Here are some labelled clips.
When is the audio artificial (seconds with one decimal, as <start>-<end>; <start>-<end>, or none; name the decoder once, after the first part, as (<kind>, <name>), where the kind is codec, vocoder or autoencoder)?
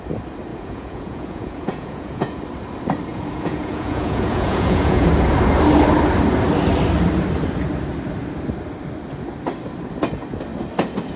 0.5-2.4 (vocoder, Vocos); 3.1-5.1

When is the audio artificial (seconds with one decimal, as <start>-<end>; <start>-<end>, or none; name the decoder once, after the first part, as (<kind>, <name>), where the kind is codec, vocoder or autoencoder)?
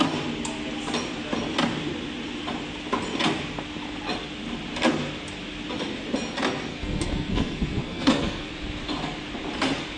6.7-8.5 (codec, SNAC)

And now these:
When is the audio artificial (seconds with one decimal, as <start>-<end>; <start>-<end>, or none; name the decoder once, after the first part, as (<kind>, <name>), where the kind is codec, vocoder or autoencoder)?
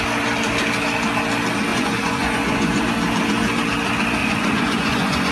1.7-2.8 (vocoder, Vocos); 4.2-5.3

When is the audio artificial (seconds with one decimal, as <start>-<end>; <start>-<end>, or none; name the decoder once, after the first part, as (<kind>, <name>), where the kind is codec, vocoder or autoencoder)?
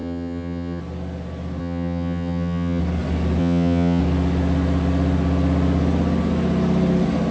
0.0-0.8 (vocoder, HiFi-GAN); 1.6-2.8; 3.4-4.0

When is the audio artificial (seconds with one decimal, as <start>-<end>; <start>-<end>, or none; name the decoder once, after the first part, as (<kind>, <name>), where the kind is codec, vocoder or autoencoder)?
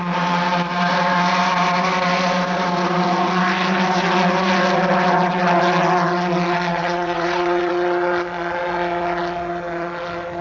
6.7-7.7 (vocoder, WaveNeXt)